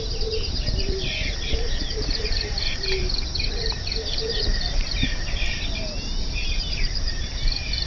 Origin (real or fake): fake